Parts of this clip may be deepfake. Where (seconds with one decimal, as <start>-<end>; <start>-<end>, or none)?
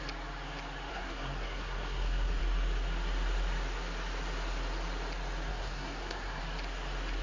0.9-2.4; 5.5-6.4